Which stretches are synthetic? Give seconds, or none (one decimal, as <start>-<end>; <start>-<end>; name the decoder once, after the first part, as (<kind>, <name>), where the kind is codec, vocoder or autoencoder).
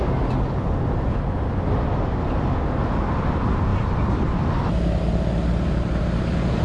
none